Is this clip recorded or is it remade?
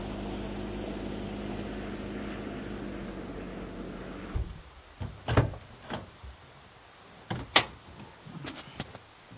recorded